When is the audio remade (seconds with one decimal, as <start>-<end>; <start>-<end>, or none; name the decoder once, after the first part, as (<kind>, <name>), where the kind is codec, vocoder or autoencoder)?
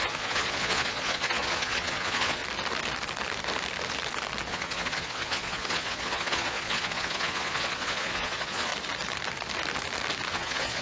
0.0-2.4 (vocoder, Vocos); 4.5-8.7; 10.3-10.8